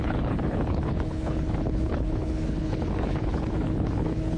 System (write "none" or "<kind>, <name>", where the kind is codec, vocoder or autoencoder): codec, HILCodec